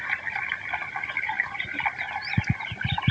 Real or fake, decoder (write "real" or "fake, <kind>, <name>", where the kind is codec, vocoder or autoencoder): fake, vocoder, BigVGAN v2